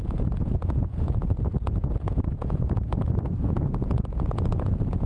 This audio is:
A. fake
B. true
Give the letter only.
A